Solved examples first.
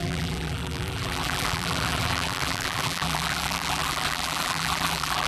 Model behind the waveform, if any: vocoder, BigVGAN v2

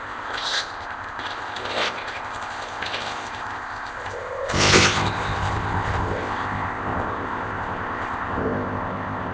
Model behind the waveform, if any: codec, ZipCodec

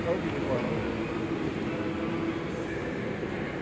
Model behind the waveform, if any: none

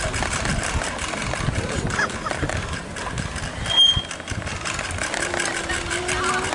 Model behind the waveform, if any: none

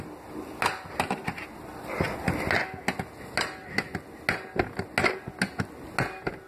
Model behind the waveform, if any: none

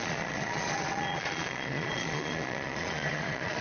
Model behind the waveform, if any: vocoder, Vocos